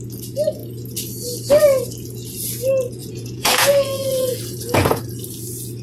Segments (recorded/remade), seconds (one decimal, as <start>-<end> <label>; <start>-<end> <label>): 0.0-3.0 recorded; 3.0-5.0 remade; 5.0-5.8 recorded